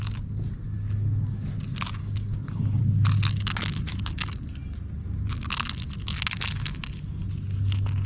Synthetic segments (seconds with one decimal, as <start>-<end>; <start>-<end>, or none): 2.0-2.8

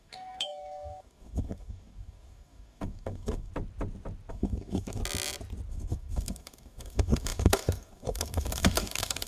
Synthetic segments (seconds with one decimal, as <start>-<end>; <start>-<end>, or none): 0.0-3.5; 4.3-5.0; 5.7-9.3